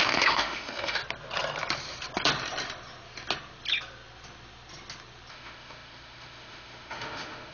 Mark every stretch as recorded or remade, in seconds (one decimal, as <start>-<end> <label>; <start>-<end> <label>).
0.0-1.0 remade; 1.0-5.3 recorded; 5.3-7.5 remade